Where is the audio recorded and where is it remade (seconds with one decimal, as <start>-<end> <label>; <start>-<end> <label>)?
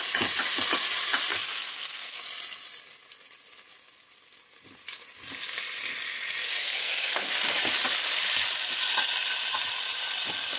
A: 0.0-1.3 recorded; 1.3-2.2 remade; 2.2-6.6 recorded; 6.6-7.3 remade; 7.3-10.6 recorded